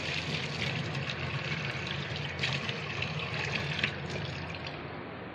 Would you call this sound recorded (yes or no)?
yes